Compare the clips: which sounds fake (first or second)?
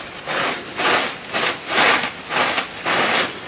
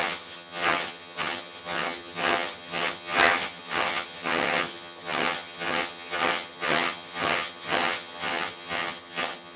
second